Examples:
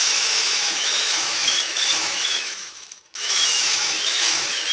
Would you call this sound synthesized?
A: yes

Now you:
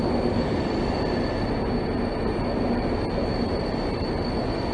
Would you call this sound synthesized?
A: no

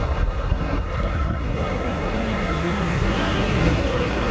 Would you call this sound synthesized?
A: yes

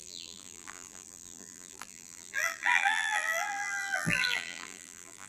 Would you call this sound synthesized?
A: yes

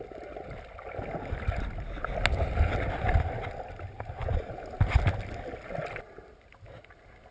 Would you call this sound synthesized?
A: no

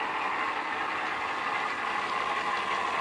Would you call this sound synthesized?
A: no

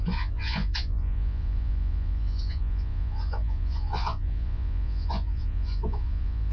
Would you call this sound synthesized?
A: yes